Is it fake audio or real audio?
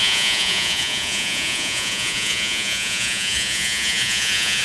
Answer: fake